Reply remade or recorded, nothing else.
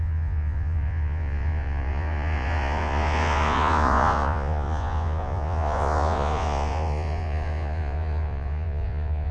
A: remade